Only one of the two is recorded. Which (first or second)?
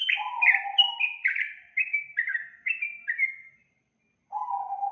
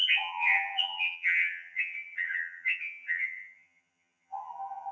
first